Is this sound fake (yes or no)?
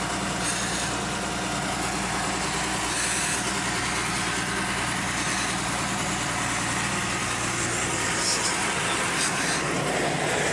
no